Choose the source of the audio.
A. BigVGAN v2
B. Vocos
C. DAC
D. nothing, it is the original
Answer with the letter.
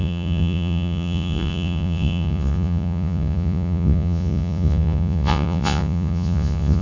B